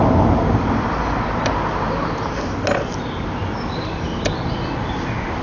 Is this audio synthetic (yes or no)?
no